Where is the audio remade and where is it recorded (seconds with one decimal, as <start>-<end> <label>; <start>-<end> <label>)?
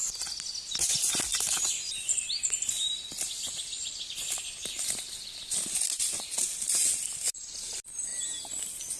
0.0-1.3 recorded; 1.3-6.2 remade; 6.2-9.0 recorded